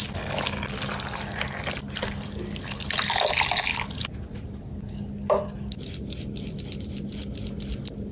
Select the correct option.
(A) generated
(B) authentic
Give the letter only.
B